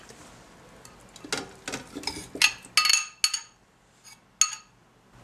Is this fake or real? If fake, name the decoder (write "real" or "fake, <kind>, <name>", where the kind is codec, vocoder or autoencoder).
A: real